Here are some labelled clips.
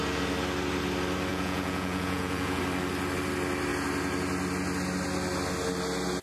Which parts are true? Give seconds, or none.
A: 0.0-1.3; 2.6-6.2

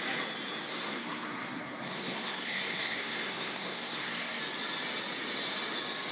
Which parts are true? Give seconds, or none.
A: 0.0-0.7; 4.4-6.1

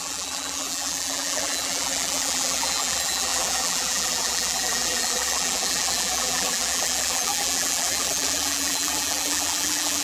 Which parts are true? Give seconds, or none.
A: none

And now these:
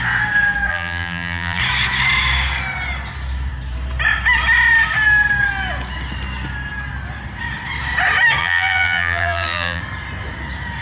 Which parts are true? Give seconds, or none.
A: 0.0-0.7; 1.6-8.4; 9.8-10.8